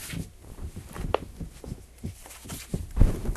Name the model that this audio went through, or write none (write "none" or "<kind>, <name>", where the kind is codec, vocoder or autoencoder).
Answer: none